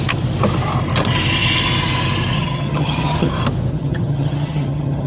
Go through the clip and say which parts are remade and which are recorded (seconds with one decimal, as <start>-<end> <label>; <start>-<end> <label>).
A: 0.0-2.3 recorded; 2.3-3.3 remade; 3.3-3.7 recorded; 3.7-5.1 remade